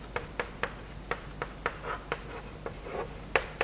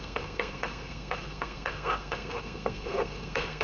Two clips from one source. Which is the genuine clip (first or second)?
first